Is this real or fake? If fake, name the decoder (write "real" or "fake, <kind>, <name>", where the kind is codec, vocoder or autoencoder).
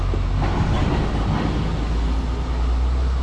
real